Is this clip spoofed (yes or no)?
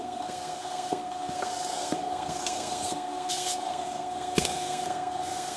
yes